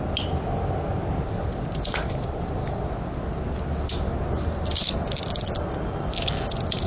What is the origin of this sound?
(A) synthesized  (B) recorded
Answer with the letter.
B